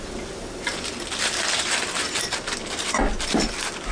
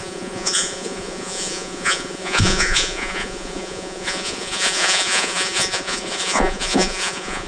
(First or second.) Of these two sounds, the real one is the first